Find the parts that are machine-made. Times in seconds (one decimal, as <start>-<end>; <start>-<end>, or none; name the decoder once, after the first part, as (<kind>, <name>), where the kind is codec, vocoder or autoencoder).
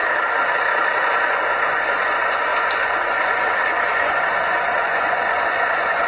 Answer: 1.0-6.1 (vocoder, Vocos)